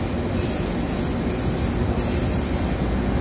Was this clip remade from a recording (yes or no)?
no